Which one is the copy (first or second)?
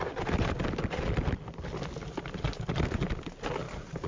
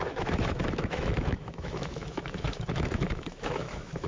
second